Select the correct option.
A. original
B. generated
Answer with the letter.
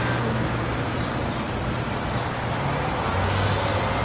A